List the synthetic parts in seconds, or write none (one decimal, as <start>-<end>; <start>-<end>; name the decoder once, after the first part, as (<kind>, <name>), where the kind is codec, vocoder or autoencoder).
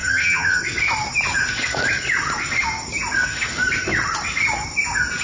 0.0-0.6 (vocoder, HiFi-GAN)